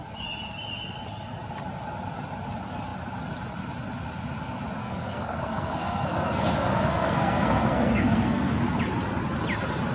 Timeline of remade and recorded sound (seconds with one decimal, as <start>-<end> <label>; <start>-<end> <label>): 0.0-4.8 recorded; 4.8-8.6 remade; 8.6-9.9 recorded